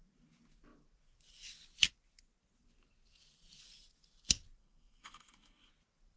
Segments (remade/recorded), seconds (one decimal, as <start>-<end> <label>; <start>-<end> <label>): 0.0-4.6 recorded; 4.6-5.7 remade; 5.7-6.2 recorded